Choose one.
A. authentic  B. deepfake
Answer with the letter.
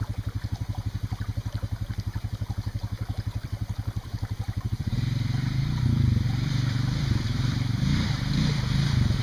B